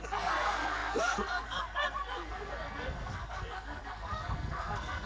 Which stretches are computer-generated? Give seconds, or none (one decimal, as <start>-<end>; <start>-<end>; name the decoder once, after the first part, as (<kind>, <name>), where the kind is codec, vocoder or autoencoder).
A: 0.0-5.1 (codec, SNAC)